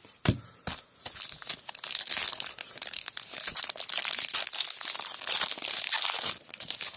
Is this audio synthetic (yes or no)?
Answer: no